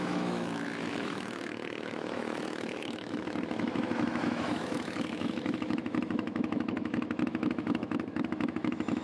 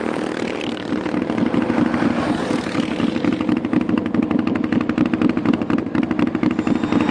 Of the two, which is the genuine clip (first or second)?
second